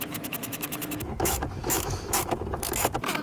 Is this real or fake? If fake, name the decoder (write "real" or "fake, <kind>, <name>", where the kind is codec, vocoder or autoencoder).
fake, autoencoder, DAC-VAE